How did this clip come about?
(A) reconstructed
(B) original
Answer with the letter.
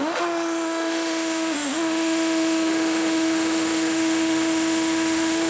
A